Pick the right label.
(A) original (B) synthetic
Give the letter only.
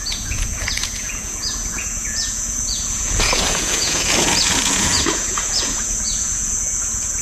B